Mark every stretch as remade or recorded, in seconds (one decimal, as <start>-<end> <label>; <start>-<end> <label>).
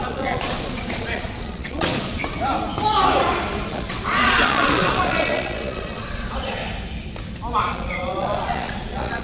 0.0-2.2 remade; 2.2-3.7 recorded; 3.7-6.6 remade; 6.6-7.6 recorded; 7.6-9.2 remade